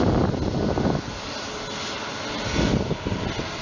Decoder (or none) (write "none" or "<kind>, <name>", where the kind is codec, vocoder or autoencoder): none